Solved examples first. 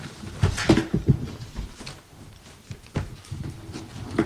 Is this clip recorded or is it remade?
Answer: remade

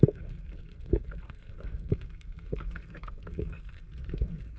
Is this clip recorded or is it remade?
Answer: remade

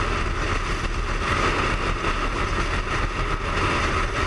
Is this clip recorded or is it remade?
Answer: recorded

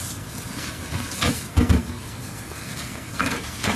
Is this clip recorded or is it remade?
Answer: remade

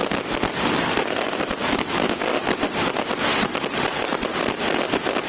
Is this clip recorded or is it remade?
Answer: recorded